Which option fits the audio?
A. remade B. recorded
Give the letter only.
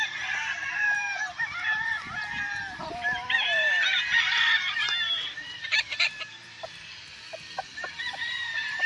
A